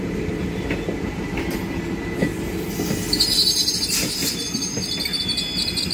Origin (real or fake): real